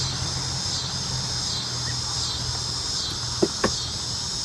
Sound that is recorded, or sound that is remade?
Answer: recorded